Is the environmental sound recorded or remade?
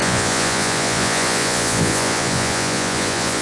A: remade